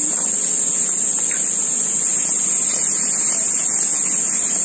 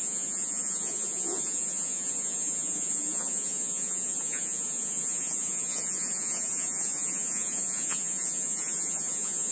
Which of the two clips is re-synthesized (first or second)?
second